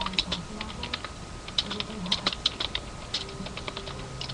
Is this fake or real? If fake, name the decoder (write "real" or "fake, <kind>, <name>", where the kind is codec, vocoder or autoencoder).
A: real